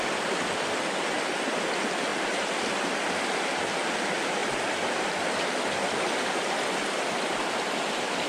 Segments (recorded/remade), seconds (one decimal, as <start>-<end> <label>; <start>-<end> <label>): 0.0-2.1 recorded; 2.1-2.8 remade; 2.8-8.3 recorded

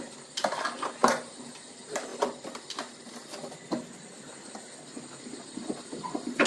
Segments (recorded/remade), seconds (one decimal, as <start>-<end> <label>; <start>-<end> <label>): 0.0-2.1 remade; 2.1-5.2 recorded; 5.2-6.5 remade

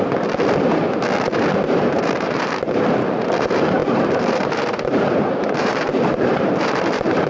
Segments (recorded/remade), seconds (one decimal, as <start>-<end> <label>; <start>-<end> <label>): 0.0-1.5 recorded; 1.5-3.3 remade; 3.3-3.8 recorded; 3.8-7.3 remade

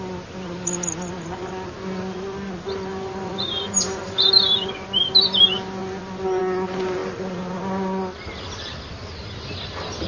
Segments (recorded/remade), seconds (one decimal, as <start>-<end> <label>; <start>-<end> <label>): 0.0-2.9 recorded; 2.9-4.3 remade; 4.3-10.1 recorded

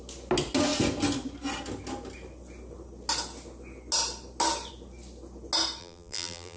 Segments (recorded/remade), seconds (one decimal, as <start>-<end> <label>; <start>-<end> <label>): 0.0-5.8 recorded; 5.8-6.6 remade

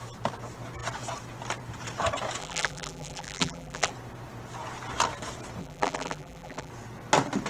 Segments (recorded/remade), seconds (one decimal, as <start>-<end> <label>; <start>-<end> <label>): 0.0-2.4 recorded; 2.4-3.9 remade; 3.9-5.6 recorded; 5.6-6.7 remade; 6.7-7.5 recorded

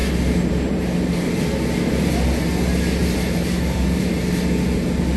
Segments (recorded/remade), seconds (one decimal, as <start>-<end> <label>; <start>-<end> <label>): 0.0-3.0 recorded; 3.0-4.1 remade; 4.1-5.2 recorded